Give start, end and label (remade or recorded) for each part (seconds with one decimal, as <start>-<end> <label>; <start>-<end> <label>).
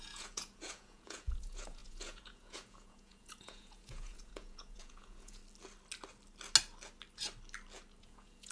0.0-5.4 remade; 5.4-8.0 recorded; 8.0-8.5 remade